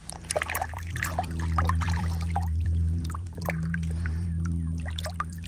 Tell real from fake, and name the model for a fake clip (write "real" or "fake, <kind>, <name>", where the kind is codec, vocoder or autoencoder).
fake, vocoder, BigVGAN v2